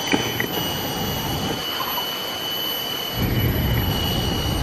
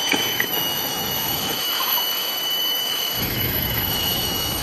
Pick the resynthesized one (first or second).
second